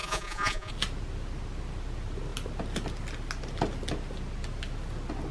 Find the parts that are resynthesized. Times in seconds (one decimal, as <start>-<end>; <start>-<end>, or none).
0.0-0.7